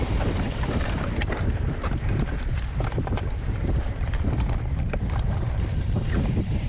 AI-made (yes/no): yes